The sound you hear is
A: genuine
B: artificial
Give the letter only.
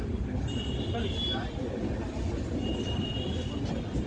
A